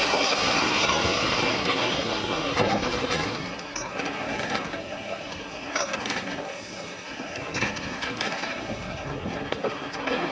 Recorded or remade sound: remade